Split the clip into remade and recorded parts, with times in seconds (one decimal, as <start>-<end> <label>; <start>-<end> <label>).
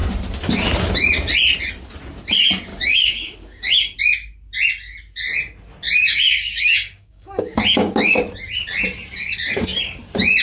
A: 0.0-2.7 recorded; 2.7-4.0 remade; 4.0-6.0 recorded; 6.0-8.2 remade; 8.2-10.4 recorded